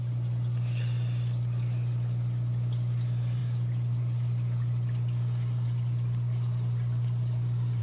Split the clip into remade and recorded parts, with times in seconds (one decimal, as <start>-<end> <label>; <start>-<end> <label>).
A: 0.0-3.4 recorded; 3.4-7.8 remade